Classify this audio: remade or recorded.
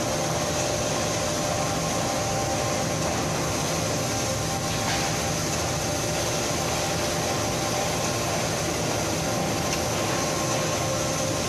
recorded